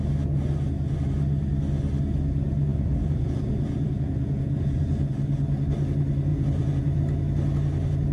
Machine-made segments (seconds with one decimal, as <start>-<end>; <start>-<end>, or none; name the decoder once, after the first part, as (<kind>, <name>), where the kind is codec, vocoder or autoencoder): 2.7-5.1 (vocoder, Vocos); 6.3-7.0